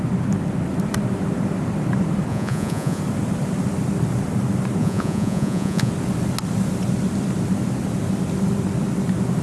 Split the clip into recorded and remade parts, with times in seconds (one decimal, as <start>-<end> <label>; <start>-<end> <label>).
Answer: 0.0-2.3 recorded; 2.3-3.0 remade; 3.0-4.8 recorded; 4.8-5.9 remade; 5.9-9.4 recorded